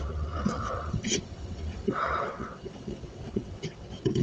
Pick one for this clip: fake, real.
fake